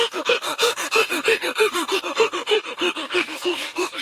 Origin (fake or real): fake